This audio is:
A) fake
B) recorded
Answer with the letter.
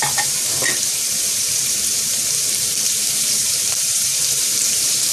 A